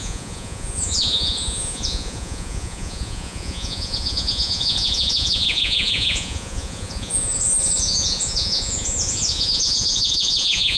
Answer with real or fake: fake